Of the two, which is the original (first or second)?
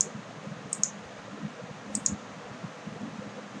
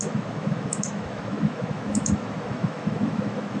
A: first